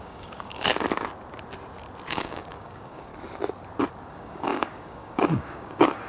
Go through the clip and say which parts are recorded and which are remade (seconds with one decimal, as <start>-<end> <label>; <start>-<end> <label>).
0.0-0.7 remade; 0.7-2.1 recorded; 2.1-3.1 remade; 3.1-4.1 recorded; 4.1-6.1 remade